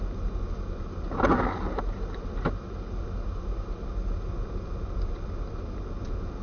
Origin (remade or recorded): recorded